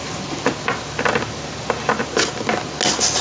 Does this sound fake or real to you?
real